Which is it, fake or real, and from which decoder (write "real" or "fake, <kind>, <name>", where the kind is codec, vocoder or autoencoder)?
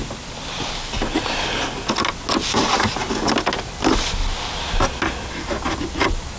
real